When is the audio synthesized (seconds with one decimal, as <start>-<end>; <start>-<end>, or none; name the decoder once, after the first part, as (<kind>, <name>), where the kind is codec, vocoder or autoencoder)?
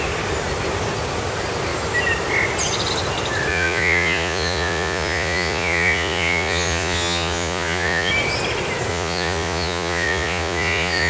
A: 3.5-8.1 (vocoder, Vocos); 8.9-11.1